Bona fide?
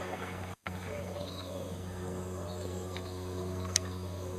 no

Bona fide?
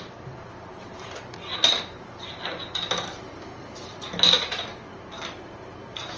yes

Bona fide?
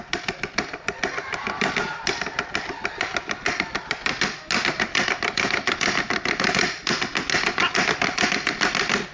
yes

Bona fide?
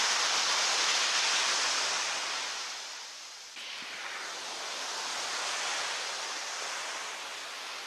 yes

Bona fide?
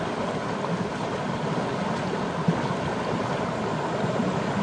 yes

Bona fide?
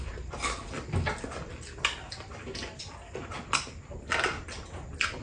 yes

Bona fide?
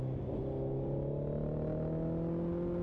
yes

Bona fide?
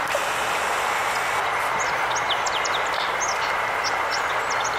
yes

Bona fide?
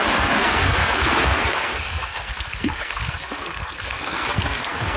no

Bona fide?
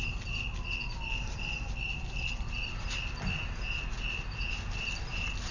yes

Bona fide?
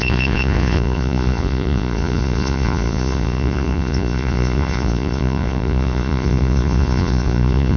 no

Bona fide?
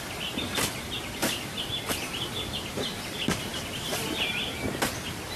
no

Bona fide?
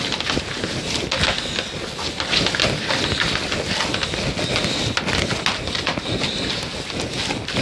yes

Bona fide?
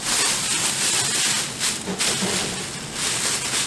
yes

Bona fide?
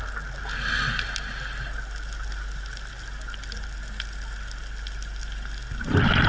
yes